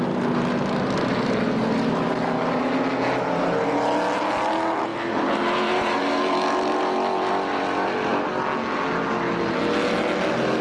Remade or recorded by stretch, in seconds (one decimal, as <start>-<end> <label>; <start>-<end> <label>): 0.0-10.6 recorded